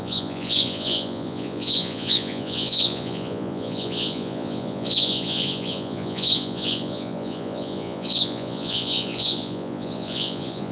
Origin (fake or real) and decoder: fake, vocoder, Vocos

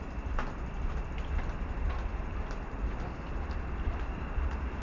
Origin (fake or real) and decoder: real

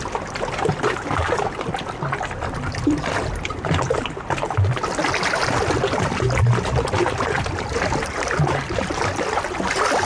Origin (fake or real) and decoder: real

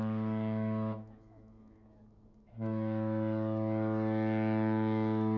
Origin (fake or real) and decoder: fake, autoencoder, DAC-VAE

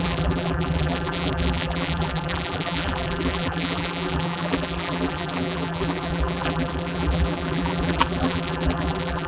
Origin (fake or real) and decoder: fake, vocoder, BigVGAN v2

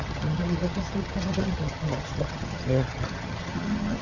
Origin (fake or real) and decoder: fake, vocoder, HiFi-GAN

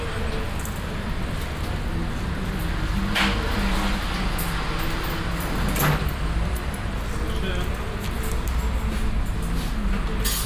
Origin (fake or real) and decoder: real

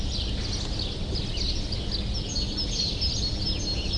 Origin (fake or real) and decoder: real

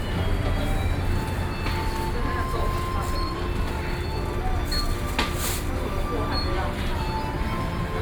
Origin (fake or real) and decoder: real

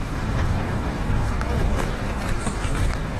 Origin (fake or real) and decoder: fake, codec, DAC